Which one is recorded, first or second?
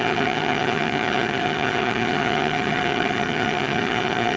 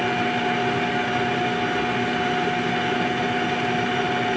second